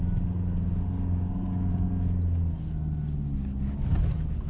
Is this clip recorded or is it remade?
recorded